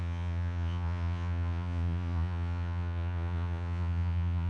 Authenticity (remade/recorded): remade